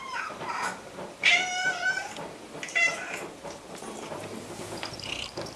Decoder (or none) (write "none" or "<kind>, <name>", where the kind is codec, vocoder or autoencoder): vocoder, BigVGAN v2